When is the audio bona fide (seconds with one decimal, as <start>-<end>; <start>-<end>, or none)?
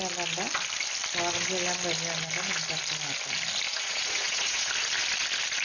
0.0-3.7; 4.7-5.6